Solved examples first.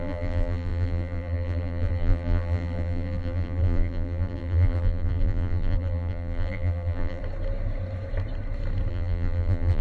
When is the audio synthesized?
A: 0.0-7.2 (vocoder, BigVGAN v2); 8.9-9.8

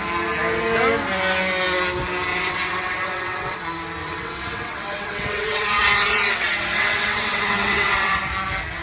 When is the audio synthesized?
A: 2.3-3.6 (vocoder, WaveNeXt); 4.0-8.2

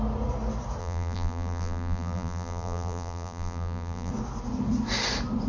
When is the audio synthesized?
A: 0.8-4.1 (vocoder, BigVGAN v2)

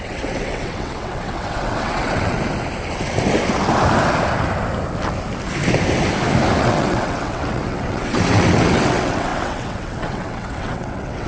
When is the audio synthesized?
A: 0.0-2.4 (vocoder, WaveNeXt); 6.6-11.3

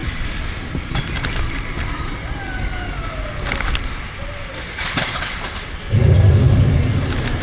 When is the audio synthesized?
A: none